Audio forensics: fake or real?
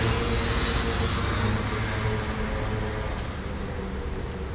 real